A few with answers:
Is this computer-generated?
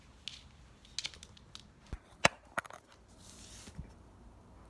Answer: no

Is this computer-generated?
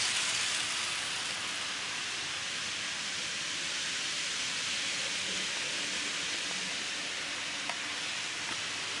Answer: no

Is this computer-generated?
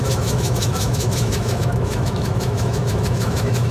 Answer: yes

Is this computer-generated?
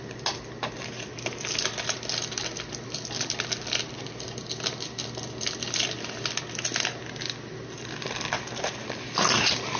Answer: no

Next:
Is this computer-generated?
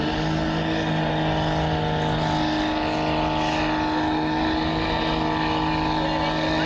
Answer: no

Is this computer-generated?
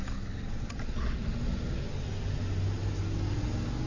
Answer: no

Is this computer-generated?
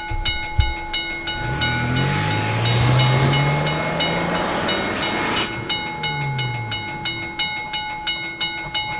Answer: no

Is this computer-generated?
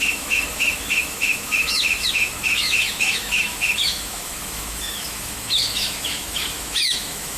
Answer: yes